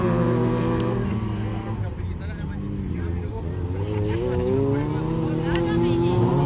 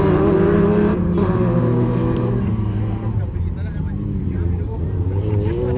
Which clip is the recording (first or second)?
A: first